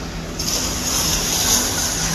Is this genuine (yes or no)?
yes